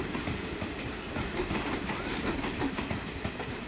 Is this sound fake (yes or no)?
no